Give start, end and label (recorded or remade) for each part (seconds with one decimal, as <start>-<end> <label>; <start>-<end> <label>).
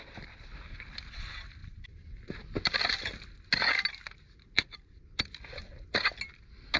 0.0-6.8 recorded